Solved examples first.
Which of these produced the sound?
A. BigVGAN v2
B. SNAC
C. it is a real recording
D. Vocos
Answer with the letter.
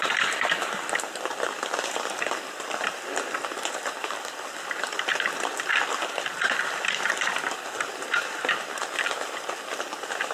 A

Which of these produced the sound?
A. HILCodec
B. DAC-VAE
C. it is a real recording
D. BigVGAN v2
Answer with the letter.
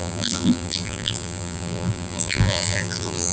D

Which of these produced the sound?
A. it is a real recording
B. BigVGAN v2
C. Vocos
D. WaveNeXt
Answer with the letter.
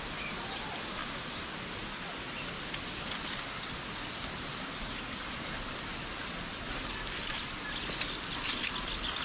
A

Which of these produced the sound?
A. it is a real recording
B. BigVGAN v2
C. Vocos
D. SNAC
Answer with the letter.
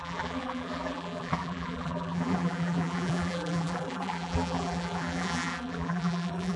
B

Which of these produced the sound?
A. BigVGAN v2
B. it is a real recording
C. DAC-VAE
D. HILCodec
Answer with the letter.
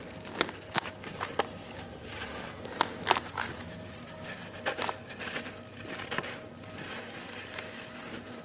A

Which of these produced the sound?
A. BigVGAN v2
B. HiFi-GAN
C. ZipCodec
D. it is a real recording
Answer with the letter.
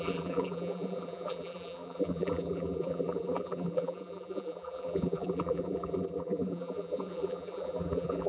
A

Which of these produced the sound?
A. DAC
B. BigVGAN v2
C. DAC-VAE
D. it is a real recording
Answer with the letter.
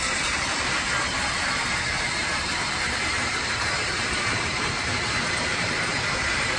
B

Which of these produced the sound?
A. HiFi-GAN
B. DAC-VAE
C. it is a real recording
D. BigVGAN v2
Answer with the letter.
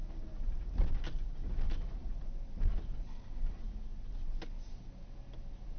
C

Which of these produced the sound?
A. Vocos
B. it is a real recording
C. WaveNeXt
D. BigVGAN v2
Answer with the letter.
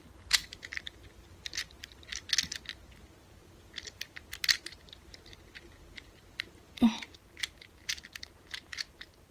D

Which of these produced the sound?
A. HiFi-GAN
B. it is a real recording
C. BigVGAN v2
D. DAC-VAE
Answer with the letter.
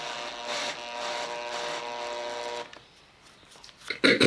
B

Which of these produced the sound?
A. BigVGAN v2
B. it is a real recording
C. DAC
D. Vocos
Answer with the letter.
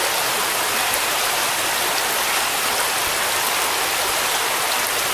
B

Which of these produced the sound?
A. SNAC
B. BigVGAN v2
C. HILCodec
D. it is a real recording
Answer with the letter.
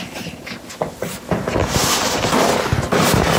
D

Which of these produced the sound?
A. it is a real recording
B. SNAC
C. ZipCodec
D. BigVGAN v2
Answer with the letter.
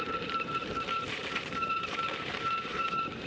D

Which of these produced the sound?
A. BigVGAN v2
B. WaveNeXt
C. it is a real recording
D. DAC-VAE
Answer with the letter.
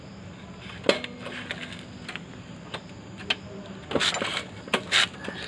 C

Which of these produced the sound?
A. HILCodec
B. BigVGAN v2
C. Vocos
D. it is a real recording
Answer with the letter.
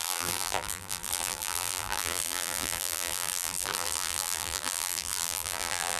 B